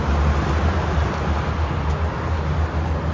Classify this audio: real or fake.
real